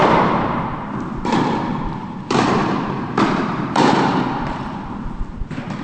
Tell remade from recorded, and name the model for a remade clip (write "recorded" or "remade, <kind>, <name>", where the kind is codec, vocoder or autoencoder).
remade, vocoder, BigVGAN v2